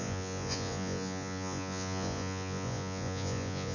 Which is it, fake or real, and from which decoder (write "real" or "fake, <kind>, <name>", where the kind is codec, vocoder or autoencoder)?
fake, vocoder, Vocos